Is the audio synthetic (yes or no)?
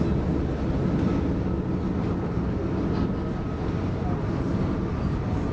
no